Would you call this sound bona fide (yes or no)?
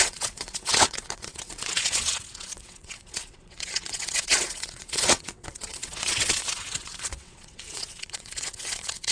no